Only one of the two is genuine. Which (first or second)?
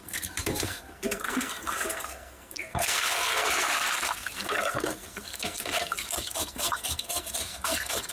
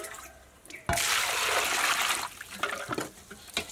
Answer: second